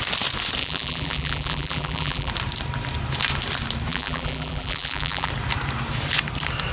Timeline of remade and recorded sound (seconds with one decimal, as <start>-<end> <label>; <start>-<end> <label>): 0.0-0.6 recorded; 0.6-2.3 remade; 2.3-3.9 recorded; 3.9-5.3 remade; 5.3-6.7 recorded